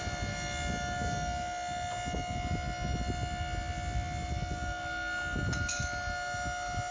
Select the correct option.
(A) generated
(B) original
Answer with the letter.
B